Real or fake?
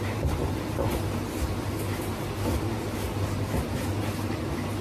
real